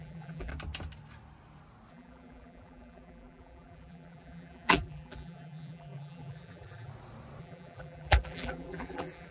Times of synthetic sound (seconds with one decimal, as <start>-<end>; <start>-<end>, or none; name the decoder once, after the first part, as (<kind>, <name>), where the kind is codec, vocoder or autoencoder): 0.0-0.5 (vocoder, BigVGAN v2); 1.9-6.9; 7.4-9.3